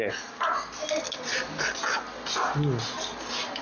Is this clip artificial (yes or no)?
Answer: no